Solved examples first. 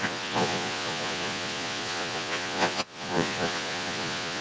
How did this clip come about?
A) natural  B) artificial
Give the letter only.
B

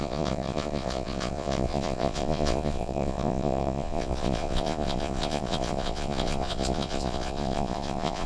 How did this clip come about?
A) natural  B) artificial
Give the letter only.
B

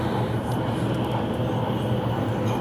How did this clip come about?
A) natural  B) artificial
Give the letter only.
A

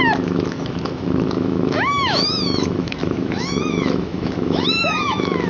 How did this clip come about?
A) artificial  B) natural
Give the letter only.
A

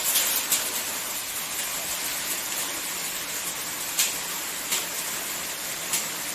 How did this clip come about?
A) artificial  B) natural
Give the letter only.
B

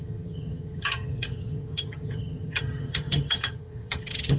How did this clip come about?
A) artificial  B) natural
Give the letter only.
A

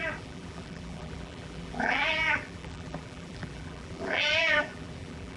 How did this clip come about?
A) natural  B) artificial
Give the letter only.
B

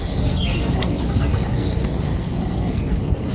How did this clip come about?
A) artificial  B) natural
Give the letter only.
A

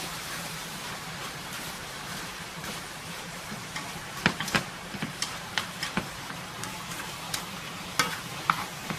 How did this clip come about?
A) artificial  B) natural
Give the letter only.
A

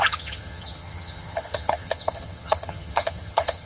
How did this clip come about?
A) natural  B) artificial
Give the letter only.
B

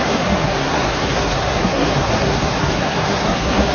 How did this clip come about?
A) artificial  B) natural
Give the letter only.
A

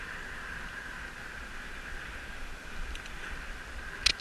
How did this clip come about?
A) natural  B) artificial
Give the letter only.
A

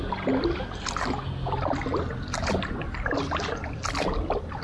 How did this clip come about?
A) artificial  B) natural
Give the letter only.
B